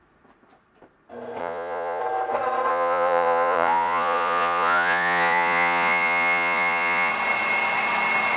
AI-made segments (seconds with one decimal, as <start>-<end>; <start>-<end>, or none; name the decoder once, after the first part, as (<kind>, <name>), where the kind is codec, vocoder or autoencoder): 1.4-2.0 (vocoder, Vocos); 2.7-7.1